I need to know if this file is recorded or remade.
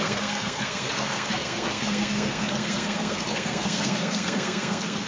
remade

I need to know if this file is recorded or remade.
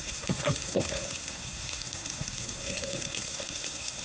remade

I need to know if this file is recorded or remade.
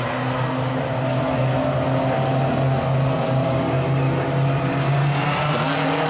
recorded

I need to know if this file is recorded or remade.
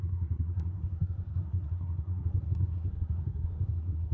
remade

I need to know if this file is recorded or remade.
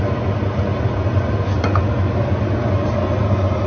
recorded